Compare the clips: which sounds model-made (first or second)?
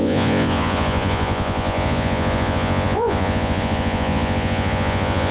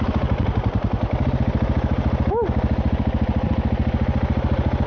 first